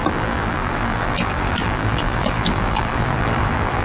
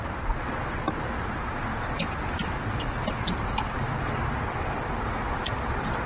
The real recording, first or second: second